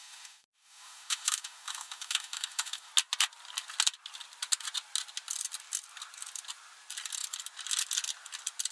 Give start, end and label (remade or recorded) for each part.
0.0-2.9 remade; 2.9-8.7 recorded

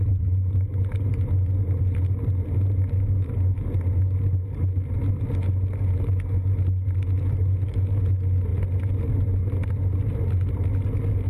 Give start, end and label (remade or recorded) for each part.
0.0-11.3 recorded

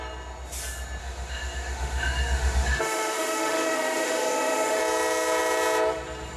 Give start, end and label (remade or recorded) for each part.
0.0-1.0 recorded; 1.0-4.8 remade; 4.8-6.4 recorded

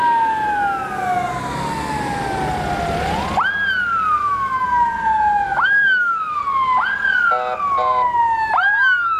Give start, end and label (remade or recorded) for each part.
0.0-4.2 recorded; 4.2-6.4 remade; 6.4-9.2 recorded

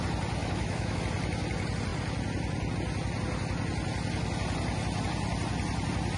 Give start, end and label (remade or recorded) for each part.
0.0-0.4 recorded; 0.4-1.0 remade; 1.0-6.2 recorded

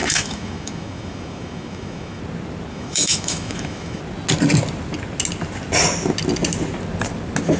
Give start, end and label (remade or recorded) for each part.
0.0-2.2 remade; 2.2-2.7 recorded; 2.7-4.0 remade; 4.0-7.6 recorded

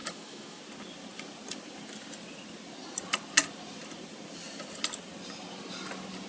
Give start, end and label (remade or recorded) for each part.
0.0-0.6 remade; 0.6-6.3 recorded

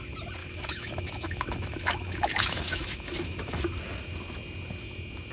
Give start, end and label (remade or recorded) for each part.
0.0-0.4 recorded; 0.4-3.6 remade; 3.6-5.3 recorded